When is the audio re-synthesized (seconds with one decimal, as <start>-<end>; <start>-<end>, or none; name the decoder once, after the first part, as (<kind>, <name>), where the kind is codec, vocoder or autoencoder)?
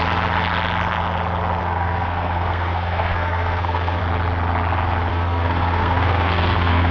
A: 1.6-4.0 (codec, SNAC); 5.1-6.9